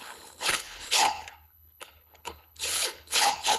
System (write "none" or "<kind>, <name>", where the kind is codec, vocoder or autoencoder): codec, HILCodec